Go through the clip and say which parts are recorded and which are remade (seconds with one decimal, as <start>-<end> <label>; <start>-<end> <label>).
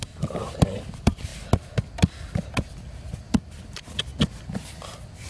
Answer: 0.0-1.3 remade; 1.3-2.2 recorded; 2.2-4.1 remade; 4.1-5.3 recorded